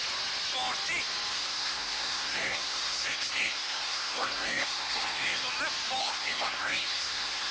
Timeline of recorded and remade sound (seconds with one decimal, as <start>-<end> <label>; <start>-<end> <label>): 0.0-1.3 recorded; 1.3-5.4 remade; 5.4-6.0 recorded; 6.0-7.5 remade